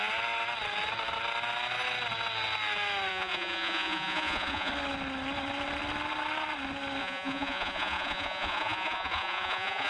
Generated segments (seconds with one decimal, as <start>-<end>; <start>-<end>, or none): 3.1-4.7; 7.0-9.9

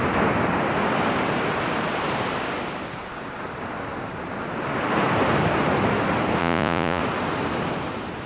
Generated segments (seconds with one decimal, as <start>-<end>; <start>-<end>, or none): 6.4-7.0

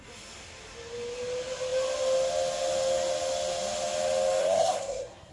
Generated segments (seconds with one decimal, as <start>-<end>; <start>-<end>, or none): 4.4-5.3

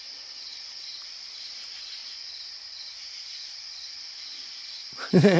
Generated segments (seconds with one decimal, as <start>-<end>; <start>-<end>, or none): none

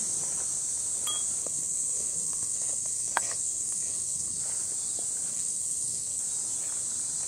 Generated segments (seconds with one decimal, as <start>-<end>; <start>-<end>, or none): 1.4-4.4; 5.3-6.2

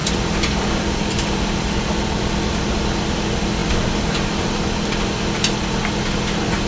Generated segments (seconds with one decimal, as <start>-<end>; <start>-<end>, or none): 0.0-1.4